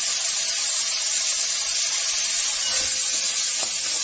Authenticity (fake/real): real